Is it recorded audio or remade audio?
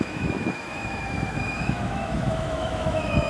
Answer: remade